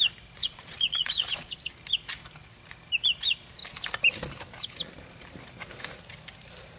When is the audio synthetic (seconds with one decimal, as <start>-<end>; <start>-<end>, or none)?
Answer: 0.4-1.7